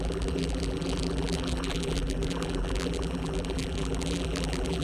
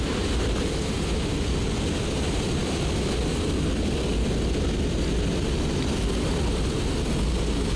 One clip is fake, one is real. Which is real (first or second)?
second